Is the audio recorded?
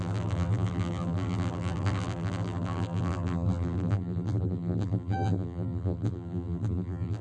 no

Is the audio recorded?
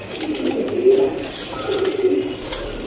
yes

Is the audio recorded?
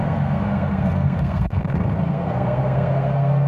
no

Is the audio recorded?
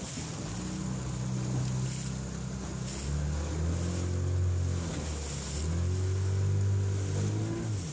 yes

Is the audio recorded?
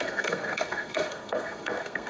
no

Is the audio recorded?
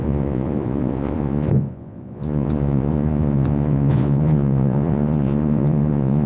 no